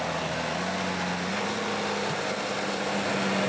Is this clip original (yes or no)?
yes